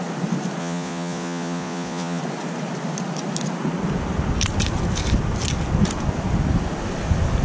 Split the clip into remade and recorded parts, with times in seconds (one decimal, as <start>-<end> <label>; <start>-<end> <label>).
0.0-0.6 recorded; 0.6-2.2 remade; 2.2-7.4 recorded